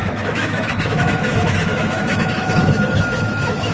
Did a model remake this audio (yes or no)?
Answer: yes